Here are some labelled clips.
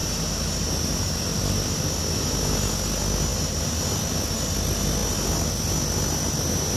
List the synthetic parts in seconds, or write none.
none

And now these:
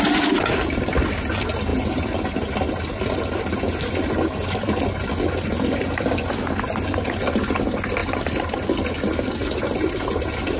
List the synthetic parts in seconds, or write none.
none

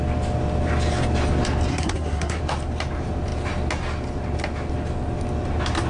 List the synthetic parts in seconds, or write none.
1.7-2.4 (codec, SNAC)